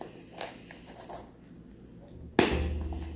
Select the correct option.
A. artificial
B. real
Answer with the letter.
B